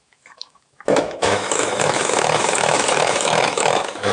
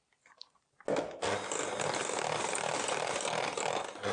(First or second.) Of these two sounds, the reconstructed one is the first